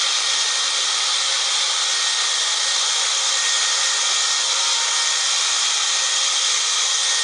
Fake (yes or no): no